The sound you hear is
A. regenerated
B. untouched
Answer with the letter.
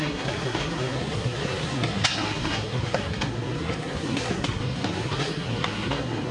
A